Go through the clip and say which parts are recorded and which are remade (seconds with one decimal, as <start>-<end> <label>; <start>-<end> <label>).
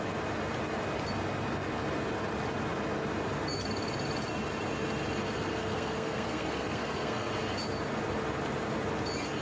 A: 0.0-5.6 recorded; 5.6-7.3 remade; 7.3-9.4 recorded